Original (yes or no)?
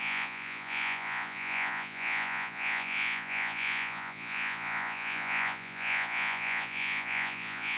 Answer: no